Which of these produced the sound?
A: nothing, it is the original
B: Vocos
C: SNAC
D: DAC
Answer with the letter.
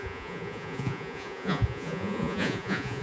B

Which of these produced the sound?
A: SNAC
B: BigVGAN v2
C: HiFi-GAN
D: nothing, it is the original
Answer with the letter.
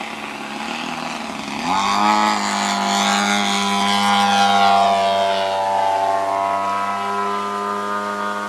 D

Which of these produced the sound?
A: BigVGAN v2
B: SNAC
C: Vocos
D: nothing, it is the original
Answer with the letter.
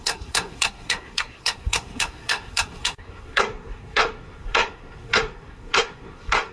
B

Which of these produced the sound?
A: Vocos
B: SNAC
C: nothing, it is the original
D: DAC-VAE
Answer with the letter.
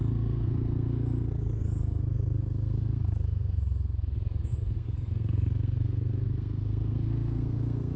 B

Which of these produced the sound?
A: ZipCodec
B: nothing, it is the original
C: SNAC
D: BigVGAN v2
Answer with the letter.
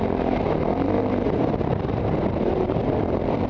D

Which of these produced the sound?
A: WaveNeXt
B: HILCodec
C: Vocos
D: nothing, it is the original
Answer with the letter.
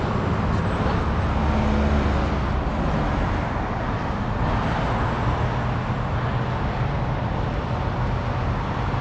D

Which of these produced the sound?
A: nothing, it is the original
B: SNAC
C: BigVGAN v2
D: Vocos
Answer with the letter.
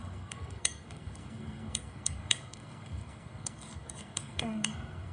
B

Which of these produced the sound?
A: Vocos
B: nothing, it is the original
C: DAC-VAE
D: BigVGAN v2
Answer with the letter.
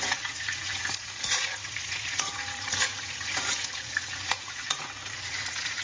A